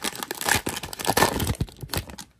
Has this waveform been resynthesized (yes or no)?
no